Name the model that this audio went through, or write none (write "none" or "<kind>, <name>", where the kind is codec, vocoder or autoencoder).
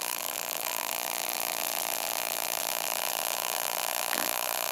vocoder, BigVGAN v2